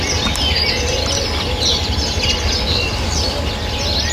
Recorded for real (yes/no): yes